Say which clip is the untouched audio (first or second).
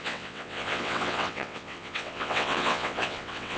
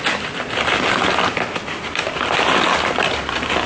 second